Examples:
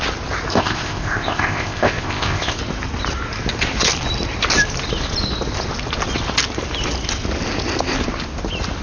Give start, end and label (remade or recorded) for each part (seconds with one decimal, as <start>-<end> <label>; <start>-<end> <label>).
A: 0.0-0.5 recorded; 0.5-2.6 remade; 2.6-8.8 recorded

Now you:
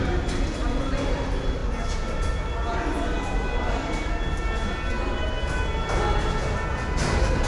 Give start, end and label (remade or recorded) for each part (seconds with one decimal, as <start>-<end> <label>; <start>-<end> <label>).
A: 0.0-7.5 recorded

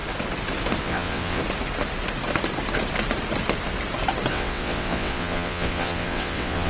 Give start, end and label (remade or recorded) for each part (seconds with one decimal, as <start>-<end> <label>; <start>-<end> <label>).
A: 0.0-0.8 recorded; 0.8-1.4 remade; 1.4-4.3 recorded; 4.3-6.7 remade

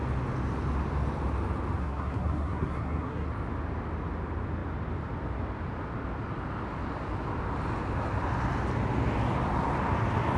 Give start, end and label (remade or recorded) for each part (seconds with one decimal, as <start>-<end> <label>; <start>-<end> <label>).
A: 0.0-1.8 recorded; 1.8-3.3 remade; 3.3-10.4 recorded

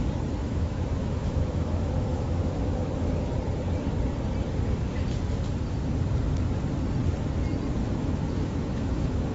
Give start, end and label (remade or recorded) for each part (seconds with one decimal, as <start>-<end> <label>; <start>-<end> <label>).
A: 0.0-0.4 recorded; 0.4-3.3 remade; 3.3-7.8 recorded; 7.8-9.3 remade

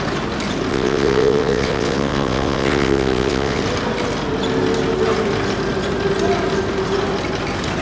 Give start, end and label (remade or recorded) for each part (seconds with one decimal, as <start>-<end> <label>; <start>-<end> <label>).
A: 0.0-0.7 recorded; 0.7-3.6 remade; 3.6-7.8 recorded

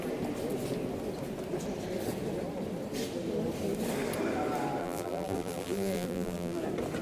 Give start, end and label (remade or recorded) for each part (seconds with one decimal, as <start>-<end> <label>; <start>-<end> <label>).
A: 0.0-4.8 recorded; 4.8-6.6 remade; 6.6-7.0 recorded

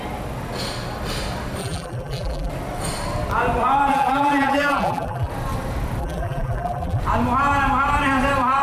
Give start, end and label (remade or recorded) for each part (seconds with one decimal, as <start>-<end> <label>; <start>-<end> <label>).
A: 0.0-1.6 recorded; 1.6-2.5 remade; 2.5-3.9 recorded; 3.9-5.3 remade; 5.3-6.0 recorded; 6.0-7.0 remade; 7.0-8.6 recorded